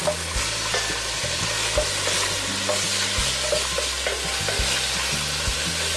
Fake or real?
real